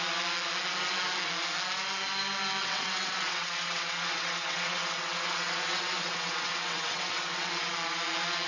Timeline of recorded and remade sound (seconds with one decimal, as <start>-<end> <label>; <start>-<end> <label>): 0.0-2.6 recorded; 2.6-7.7 remade; 7.7-8.5 recorded